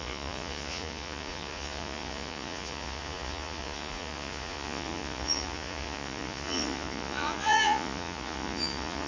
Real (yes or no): no